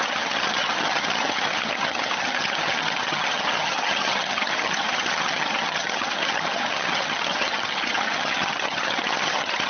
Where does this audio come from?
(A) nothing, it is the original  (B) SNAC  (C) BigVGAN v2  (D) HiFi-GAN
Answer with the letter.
D